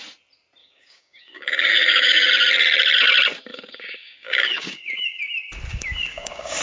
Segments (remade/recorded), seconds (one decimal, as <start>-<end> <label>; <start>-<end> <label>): 0.0-0.6 recorded; 0.6-2.3 remade; 2.3-3.5 recorded; 3.5-5.2 remade; 5.2-5.7 recorded; 5.7-6.6 remade